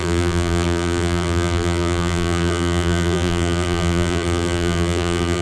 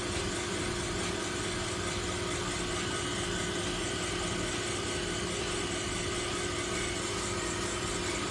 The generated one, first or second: first